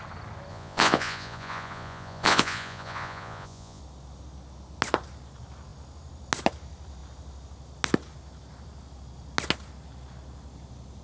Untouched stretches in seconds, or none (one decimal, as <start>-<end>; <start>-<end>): 0.0-0.5; 3.8-11.0